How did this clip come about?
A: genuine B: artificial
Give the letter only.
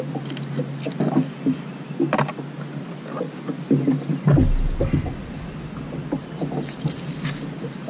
A